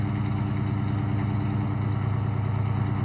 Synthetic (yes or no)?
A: no